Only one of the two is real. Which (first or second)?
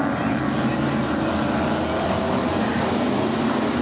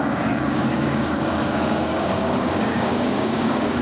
first